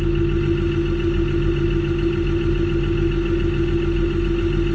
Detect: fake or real real